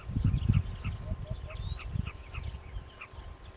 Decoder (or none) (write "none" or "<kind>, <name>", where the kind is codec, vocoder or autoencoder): none